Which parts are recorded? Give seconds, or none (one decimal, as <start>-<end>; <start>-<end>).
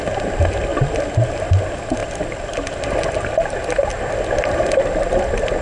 0.0-5.6